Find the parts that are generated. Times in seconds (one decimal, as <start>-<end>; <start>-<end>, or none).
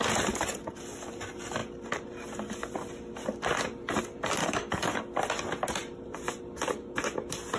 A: 4.4-5.0